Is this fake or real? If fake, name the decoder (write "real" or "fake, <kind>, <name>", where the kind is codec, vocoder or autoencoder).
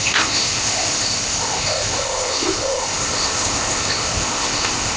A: fake, codec, ZipCodec